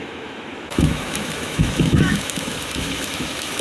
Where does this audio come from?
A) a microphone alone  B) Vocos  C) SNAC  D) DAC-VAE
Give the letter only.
D